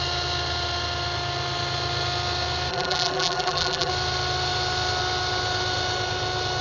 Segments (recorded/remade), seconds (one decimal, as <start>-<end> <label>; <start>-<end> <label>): 0.0-2.7 recorded; 2.7-3.9 remade; 3.9-6.6 recorded